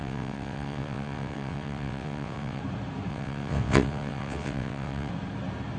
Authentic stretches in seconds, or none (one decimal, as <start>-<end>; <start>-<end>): 2.6-3.1; 5.1-5.8

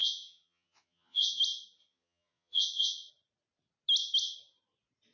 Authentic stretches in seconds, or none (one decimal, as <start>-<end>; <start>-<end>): 1.4-1.8; 3.1-5.1

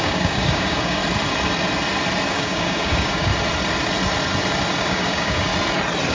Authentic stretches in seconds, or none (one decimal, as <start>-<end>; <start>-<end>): 1.0-2.3; 3.3-4.8; 5.5-6.1

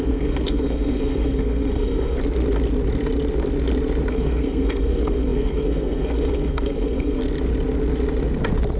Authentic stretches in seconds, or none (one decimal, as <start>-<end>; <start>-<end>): 2.2-4.1; 7.2-8.8

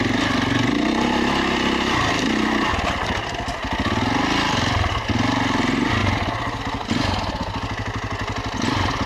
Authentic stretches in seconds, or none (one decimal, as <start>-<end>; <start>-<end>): 0.0-9.1

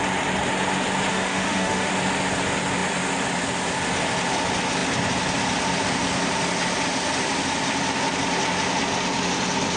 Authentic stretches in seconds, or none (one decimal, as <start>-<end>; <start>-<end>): 0.0-1.1; 1.9-9.8

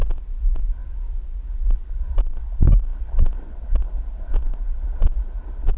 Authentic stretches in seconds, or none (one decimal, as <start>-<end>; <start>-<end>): 0.0-5.8